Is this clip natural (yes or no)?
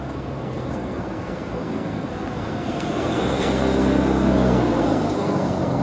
no